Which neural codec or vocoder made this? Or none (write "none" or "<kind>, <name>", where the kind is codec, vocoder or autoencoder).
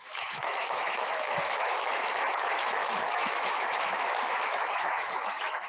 autoencoder, DAC-VAE